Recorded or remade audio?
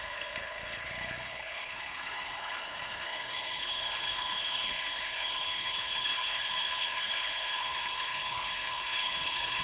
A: remade